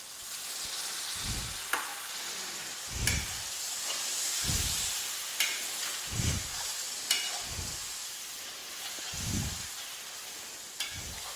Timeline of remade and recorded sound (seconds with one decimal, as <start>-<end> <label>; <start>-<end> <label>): 0.0-11.4 recorded